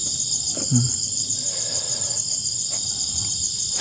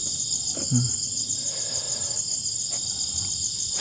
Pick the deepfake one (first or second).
first